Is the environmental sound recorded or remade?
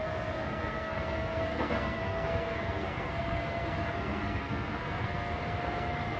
remade